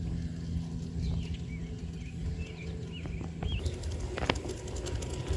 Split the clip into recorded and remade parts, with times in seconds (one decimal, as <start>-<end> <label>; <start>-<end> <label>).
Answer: 0.0-5.4 recorded